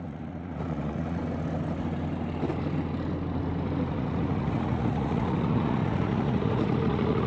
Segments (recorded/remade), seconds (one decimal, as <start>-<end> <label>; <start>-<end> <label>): 0.0-1.2 remade; 1.2-3.9 recorded; 3.9-7.3 remade